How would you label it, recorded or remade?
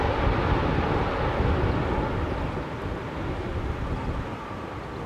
recorded